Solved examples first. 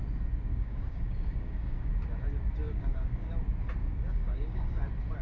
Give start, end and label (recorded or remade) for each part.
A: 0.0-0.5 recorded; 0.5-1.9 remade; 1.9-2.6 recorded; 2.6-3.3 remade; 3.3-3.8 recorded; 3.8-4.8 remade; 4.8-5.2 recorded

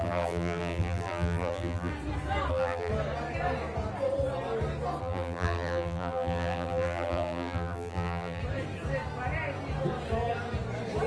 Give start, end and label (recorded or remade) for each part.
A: 0.0-1.9 remade; 1.9-2.5 recorded; 2.5-2.9 remade; 2.9-5.0 recorded; 5.0-8.4 remade; 8.4-11.1 recorded

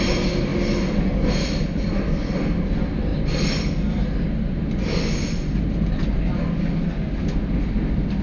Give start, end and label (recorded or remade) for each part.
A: 0.0-8.2 recorded

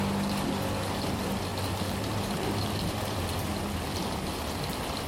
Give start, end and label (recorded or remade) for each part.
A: 0.0-5.1 recorded

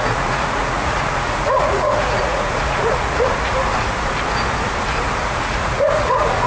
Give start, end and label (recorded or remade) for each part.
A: 0.0-3.3 remade; 3.3-5.2 recorded; 5.2-6.5 remade

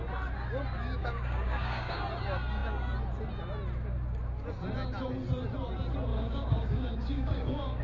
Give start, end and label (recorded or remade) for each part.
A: 0.0-1.0 recorded; 1.0-2.0 remade; 2.0-6.1 recorded; 6.1-7.8 remade

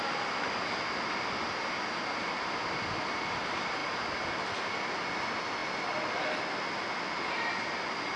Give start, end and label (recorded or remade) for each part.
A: 0.0-8.2 recorded

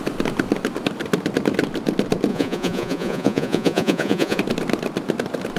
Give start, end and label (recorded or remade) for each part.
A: 0.0-2.3 recorded; 2.3-4.4 remade; 4.4-5.6 recorded